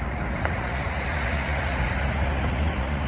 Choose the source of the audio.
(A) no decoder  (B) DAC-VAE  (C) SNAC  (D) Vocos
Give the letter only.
D